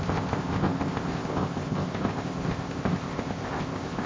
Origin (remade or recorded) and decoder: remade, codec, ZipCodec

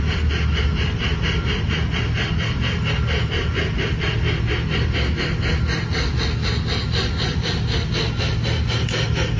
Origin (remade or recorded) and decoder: recorded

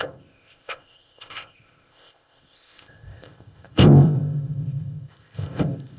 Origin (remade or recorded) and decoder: remade, codec, ZipCodec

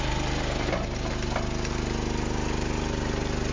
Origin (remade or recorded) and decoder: recorded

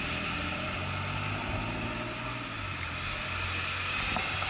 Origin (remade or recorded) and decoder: recorded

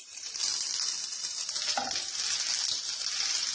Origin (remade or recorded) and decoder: recorded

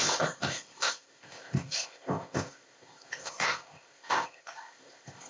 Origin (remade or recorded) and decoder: remade, codec, ZipCodec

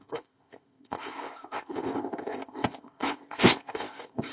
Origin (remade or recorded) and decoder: remade, codec, ZipCodec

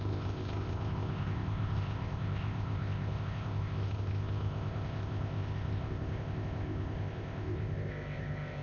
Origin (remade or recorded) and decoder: remade, codec, ZipCodec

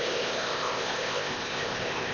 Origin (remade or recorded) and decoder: remade, codec, ZipCodec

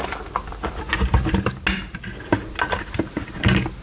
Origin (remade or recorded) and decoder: recorded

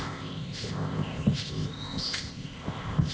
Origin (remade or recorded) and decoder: remade, codec, ZipCodec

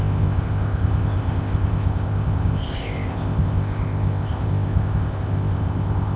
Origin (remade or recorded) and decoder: remade, codec, ZipCodec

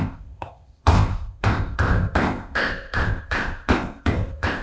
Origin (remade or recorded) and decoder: remade, codec, ZipCodec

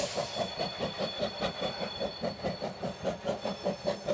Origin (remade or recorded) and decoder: recorded